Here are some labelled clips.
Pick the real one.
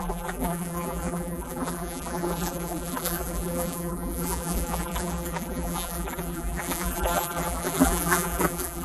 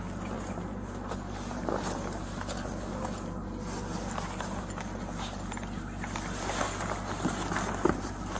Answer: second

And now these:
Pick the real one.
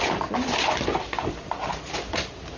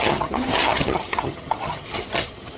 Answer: first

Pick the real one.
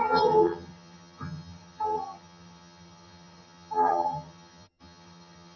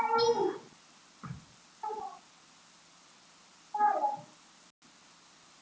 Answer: second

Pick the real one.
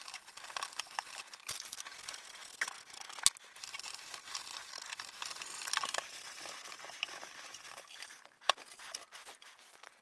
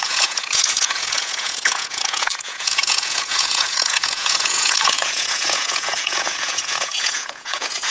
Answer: first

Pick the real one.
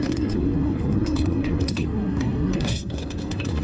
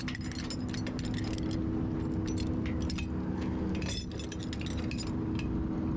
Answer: second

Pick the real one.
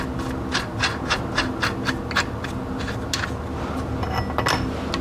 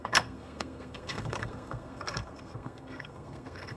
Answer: first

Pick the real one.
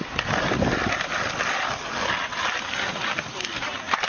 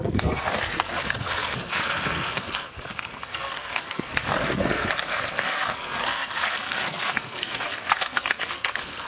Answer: first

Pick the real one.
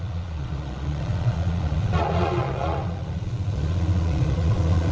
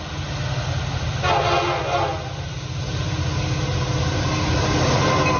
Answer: second